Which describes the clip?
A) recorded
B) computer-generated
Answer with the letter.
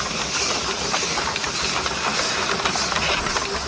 A